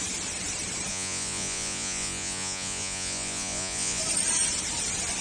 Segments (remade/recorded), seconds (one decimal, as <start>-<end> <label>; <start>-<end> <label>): 0.0-0.9 recorded; 0.9-4.0 remade; 4.0-5.2 recorded